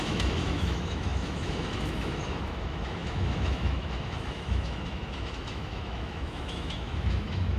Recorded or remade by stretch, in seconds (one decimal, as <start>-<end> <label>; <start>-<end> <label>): 0.0-7.6 remade